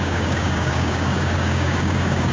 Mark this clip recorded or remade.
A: remade